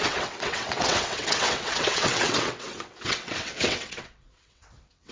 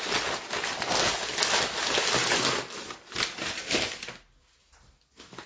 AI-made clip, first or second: first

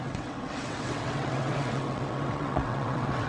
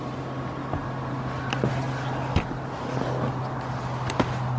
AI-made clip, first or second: first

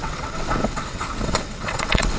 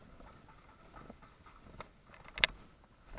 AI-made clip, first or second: first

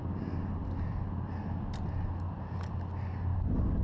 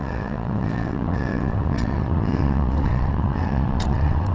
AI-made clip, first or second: second